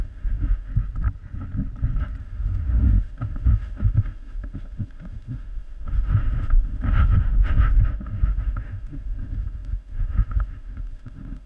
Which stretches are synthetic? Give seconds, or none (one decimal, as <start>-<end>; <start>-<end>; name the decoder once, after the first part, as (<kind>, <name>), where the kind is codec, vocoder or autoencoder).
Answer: 0.0-0.7 (autoencoder, DAC-VAE); 2.2-11.5